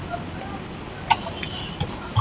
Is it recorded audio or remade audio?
recorded